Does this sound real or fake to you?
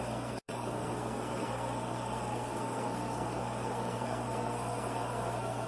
fake